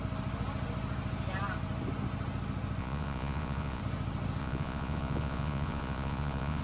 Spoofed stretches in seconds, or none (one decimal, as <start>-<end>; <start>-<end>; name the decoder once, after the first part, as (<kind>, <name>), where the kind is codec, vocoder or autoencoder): 2.8-3.8 (vocoder, Vocos); 4.4-6.6